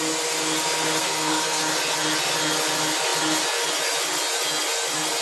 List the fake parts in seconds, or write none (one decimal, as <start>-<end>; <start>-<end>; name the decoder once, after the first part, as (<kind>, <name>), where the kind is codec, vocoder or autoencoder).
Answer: 1.0-1.6 (codec, SNAC)